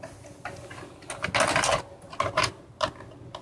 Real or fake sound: real